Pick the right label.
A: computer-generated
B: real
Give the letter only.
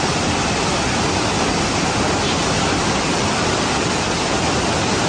A